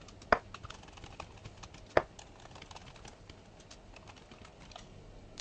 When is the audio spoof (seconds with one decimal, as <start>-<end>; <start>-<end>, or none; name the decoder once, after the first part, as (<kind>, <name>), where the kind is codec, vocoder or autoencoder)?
none